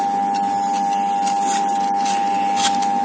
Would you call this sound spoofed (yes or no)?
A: no